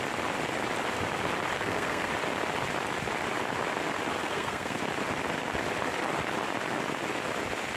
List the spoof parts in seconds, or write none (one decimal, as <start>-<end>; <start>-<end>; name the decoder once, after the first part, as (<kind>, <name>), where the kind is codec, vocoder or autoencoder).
1.5-2.1 (codec, SNAC); 4.2-4.8